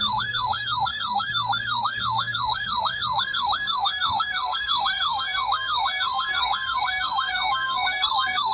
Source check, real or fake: fake